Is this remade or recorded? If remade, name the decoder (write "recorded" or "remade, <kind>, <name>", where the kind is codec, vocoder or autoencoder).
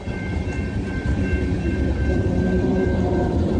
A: remade, vocoder, BigVGAN v2